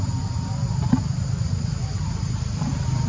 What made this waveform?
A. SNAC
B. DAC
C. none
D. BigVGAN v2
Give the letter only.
D